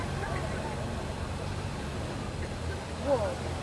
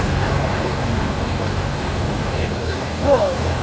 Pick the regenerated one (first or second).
second